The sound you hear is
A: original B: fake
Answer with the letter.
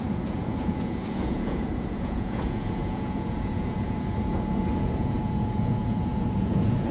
B